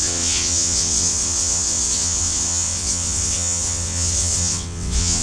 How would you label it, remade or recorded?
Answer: remade